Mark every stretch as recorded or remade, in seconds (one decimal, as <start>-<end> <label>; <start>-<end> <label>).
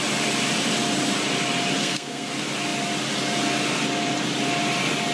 0.0-1.8 recorded; 1.8-2.3 remade; 2.3-5.1 recorded